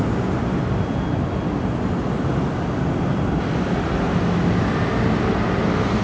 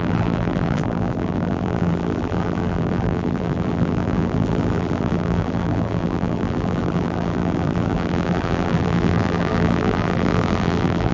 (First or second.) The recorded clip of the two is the first